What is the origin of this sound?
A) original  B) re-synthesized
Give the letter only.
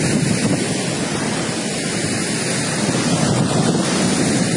B